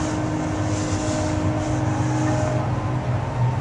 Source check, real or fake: real